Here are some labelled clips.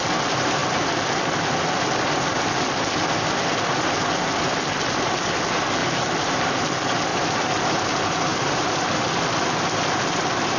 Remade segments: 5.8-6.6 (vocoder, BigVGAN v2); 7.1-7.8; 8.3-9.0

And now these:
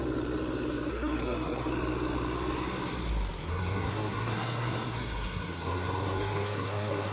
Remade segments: 0.9-1.7 (codec, SNAC); 3.5-7.1